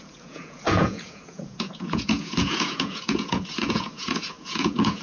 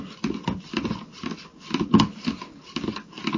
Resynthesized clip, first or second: first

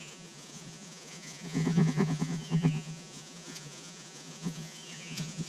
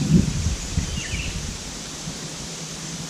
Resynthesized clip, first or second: first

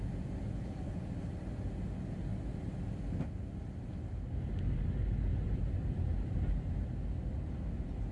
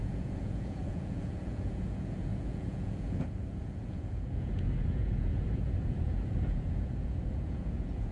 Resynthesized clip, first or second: second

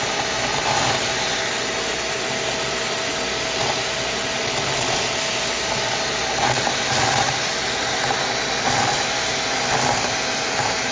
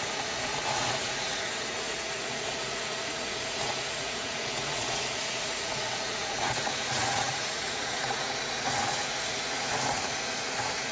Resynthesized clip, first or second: second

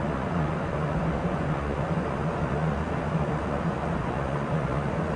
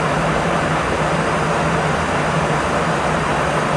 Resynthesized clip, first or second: first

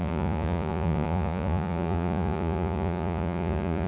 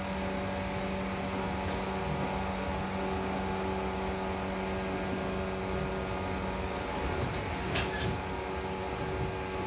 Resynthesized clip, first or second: first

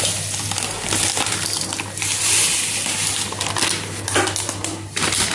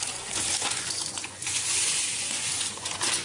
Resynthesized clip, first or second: second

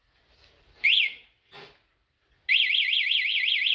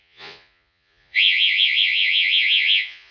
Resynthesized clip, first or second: second